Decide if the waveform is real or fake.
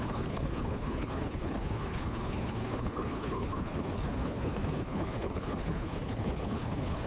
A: fake